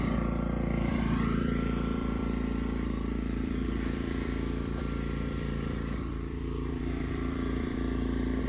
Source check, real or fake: fake